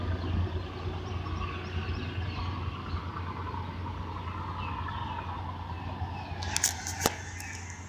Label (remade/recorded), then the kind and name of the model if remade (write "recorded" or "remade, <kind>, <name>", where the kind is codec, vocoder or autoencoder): recorded